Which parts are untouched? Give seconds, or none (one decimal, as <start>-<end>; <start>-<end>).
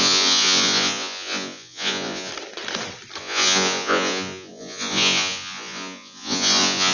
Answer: 2.3-3.2